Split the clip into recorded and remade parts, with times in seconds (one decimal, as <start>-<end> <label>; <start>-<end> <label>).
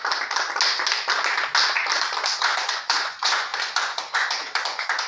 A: 0.0-2.4 recorded; 2.4-5.1 remade